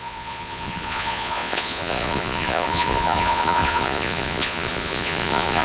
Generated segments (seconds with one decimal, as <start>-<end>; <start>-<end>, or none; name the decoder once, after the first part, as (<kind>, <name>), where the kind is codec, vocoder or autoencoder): 0.0-5.6 (vocoder, Vocos)